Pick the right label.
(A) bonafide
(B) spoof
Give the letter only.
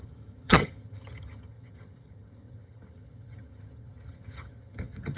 B